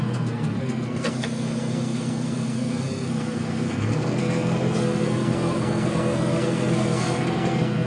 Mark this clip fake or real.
fake